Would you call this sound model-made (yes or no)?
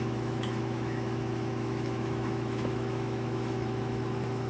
yes